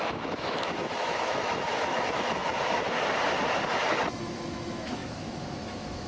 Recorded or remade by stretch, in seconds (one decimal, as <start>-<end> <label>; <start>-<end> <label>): 0.0-2.4 remade; 2.4-4.2 recorded; 4.2-6.1 remade

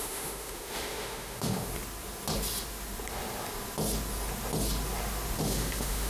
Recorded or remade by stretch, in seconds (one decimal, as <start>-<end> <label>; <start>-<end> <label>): 0.0-1.7 remade; 1.7-5.4 recorded; 5.4-6.1 remade

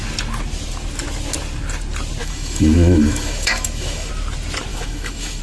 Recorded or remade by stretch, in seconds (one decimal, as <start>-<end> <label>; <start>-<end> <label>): 0.0-2.2 recorded; 2.2-4.1 remade; 4.1-4.7 recorded; 4.7-5.4 remade